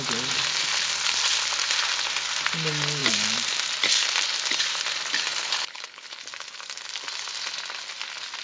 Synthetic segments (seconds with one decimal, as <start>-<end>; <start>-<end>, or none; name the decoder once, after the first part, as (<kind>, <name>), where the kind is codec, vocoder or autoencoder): 5.4-6.2 (codec, HILCodec)